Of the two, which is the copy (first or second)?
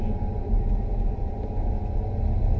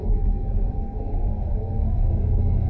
second